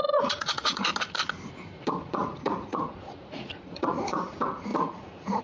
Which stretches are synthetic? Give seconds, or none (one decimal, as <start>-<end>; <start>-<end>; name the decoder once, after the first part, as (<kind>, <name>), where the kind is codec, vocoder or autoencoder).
0.0-0.9 (vocoder, Vocos); 2.0-5.4